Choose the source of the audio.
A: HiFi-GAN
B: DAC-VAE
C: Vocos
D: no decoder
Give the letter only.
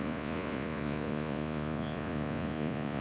C